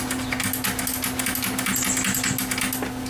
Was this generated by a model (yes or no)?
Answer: no